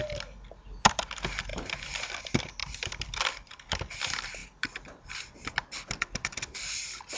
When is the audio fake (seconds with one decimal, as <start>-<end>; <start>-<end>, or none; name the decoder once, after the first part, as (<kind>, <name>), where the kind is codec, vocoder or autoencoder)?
1.5-2.2 (vocoder, BigVGAN v2); 2.6-3.8